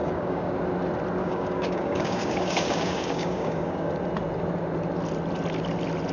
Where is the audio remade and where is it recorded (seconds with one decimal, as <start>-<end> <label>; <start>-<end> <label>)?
0.0-0.5 remade; 0.5-1.2 recorded; 1.2-3.9 remade; 3.9-6.1 recorded